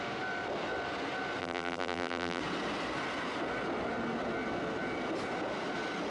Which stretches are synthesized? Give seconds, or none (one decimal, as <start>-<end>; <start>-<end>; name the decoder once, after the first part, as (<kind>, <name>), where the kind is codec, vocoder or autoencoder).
1.4-2.4 (vocoder, BigVGAN v2)